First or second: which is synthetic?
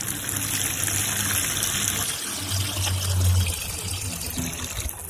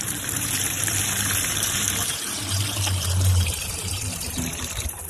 second